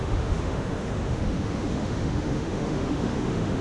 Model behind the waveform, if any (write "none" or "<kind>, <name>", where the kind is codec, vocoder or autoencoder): autoencoder, DAC-VAE